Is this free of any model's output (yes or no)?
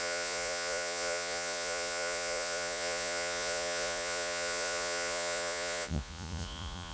no